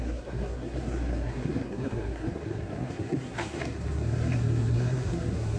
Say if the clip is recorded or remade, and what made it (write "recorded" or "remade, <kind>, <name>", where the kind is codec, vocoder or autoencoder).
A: remade, codec, SNAC